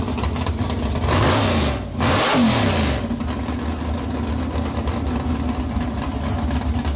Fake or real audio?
real